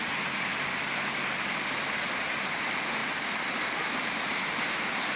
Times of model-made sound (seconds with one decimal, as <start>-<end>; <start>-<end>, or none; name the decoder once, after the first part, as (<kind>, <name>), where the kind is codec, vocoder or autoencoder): 3.0-4.0 (vocoder, BigVGAN v2)